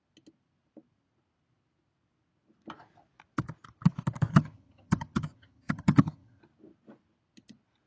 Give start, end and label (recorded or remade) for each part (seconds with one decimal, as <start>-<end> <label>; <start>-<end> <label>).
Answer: 0.0-4.3 recorded; 4.3-6.4 remade; 6.4-7.9 recorded